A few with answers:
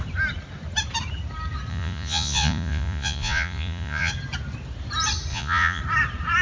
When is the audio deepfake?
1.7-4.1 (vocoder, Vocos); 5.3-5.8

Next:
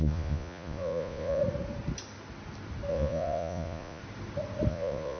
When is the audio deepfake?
0.0-1.4 (vocoder, Vocos); 2.9-4.0; 4.7-5.2